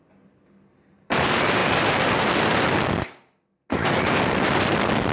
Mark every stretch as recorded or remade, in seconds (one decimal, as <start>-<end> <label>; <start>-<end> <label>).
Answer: 0.0-5.1 recorded